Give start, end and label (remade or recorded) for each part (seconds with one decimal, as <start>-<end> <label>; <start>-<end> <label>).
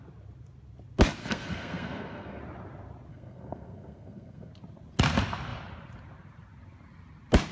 0.0-1.2 recorded; 1.2-2.4 remade; 2.4-3.1 recorded; 3.1-4.5 remade; 4.5-7.5 recorded